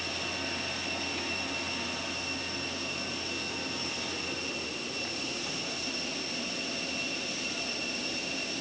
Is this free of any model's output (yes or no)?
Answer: yes